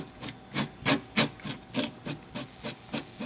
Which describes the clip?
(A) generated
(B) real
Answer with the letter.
B